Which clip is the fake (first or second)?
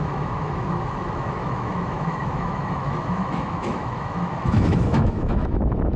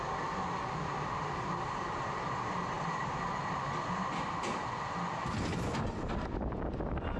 first